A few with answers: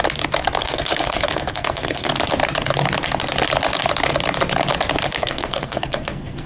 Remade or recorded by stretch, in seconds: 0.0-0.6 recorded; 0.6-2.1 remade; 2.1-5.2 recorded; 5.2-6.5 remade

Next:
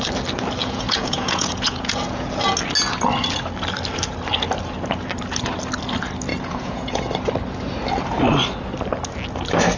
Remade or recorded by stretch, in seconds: 0.0-0.6 recorded; 0.6-2.4 remade; 2.4-6.3 recorded; 6.3-7.0 remade; 7.0-9.8 recorded

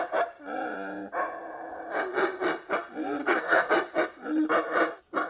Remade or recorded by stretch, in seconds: 0.0-3.2 recorded; 3.2-3.7 remade; 3.7-5.3 recorded

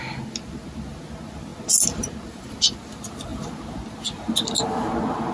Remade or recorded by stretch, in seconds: 0.0-5.3 recorded

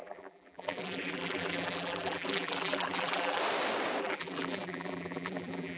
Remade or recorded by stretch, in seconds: 0.0-3.4 remade; 3.4-4.0 recorded; 4.0-5.8 remade

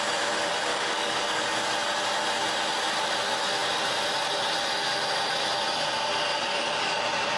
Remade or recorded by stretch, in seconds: 0.0-0.7 recorded; 0.7-1.4 remade; 1.4-6.3 recorded; 6.3-7.0 remade; 7.0-7.4 recorded

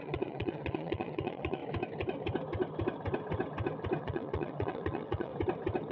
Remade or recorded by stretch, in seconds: 0.0-1.6 remade; 1.6-4.0 recorded; 4.0-5.3 remade; 5.3-5.9 recorded